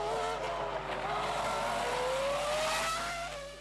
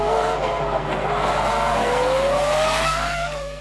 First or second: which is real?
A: first